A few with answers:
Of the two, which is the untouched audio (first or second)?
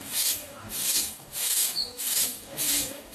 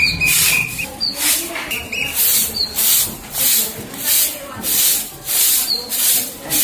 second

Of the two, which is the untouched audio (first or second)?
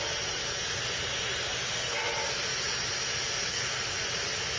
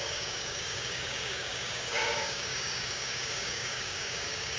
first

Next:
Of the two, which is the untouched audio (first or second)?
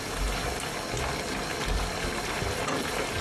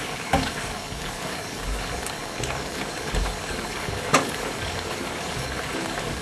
first